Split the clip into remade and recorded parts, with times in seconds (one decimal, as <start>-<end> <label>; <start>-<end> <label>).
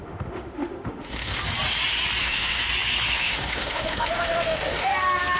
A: 0.0-1.4 remade; 1.4-2.2 recorded; 2.2-2.6 remade; 2.6-3.2 recorded; 3.2-4.9 remade; 4.9-5.4 recorded